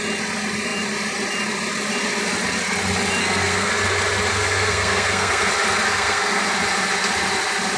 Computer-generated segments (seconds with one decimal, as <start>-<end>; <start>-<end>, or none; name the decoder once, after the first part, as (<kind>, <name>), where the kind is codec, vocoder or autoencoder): 3.2-3.7 (codec, SNAC); 4.3-5.5; 5.9-6.5